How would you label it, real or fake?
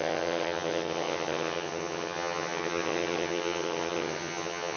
fake